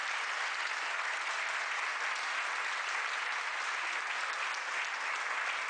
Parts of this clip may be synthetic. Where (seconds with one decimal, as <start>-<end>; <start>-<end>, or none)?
none